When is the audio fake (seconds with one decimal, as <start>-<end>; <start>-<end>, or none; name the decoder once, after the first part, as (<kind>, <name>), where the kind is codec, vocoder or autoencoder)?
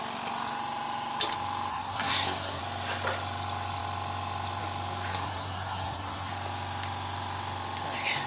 1.7-2.6 (codec, SNAC); 5.1-6.3